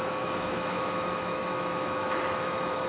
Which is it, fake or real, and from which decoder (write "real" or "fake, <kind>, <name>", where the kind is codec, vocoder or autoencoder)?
fake, autoencoder, DAC-VAE